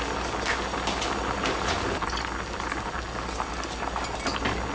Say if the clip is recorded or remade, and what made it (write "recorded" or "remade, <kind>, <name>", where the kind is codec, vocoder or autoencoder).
recorded